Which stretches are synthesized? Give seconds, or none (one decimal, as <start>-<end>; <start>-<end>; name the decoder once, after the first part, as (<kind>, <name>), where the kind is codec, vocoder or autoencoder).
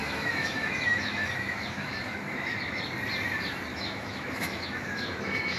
0.0-2.8 (autoencoder, DAC-VAE); 3.7-5.6